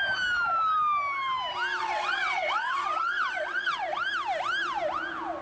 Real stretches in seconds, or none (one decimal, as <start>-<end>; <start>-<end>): 0.0-1.8; 4.0-5.4